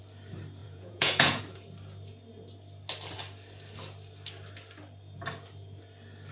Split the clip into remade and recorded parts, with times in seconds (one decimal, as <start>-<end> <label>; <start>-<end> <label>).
0.0-0.6 recorded; 0.6-1.4 remade; 1.4-6.3 recorded